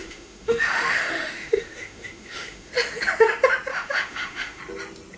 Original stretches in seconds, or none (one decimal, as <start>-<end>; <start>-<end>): 2.7-3.7; 4.6-5.2